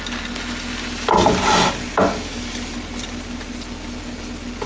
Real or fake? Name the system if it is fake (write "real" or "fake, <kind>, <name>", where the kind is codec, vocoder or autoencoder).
real